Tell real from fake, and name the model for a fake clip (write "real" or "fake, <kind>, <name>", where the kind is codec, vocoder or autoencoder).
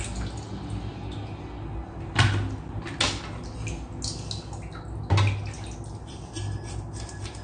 real